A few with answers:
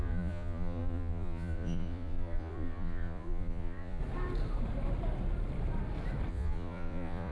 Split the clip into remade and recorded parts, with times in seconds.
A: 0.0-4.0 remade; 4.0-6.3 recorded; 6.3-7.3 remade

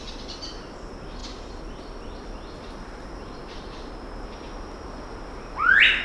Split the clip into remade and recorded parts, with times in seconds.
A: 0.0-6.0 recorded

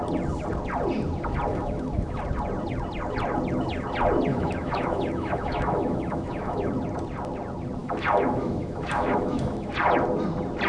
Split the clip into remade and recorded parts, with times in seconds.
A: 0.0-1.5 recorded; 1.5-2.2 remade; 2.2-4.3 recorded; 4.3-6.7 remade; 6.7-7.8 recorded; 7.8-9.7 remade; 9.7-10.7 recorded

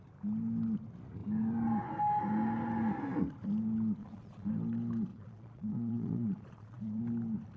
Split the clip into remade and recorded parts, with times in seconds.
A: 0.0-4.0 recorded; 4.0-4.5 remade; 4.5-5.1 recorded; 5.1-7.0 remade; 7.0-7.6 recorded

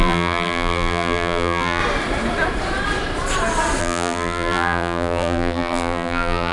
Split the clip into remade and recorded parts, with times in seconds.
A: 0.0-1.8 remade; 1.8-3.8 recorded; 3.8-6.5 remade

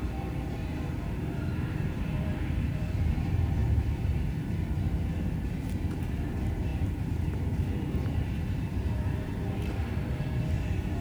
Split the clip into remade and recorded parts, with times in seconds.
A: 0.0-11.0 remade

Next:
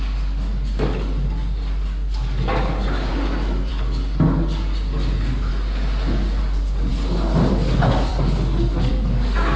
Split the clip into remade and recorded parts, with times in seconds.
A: 0.0-5.5 remade; 5.5-6.4 recorded; 6.4-6.9 remade; 6.9-7.5 recorded; 7.5-9.6 remade